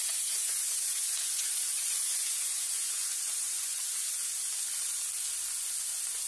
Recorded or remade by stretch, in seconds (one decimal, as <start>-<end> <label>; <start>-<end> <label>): 0.0-3.8 remade; 3.8-6.3 recorded